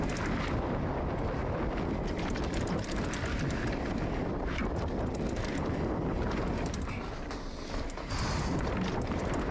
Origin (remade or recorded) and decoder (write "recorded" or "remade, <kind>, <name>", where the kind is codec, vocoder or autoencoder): recorded